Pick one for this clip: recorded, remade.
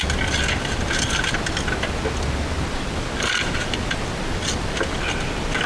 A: recorded